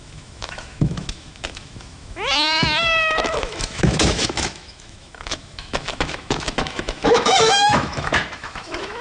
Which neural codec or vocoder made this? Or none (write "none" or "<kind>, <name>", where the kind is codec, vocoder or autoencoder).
autoencoder, DAC-VAE